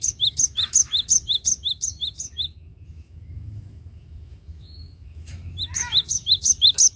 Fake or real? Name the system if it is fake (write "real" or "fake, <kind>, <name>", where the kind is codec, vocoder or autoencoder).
fake, autoencoder, DAC-VAE